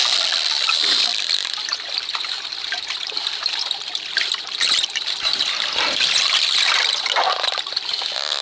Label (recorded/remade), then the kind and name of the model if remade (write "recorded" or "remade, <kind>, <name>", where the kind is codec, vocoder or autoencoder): remade, vocoder, BigVGAN v2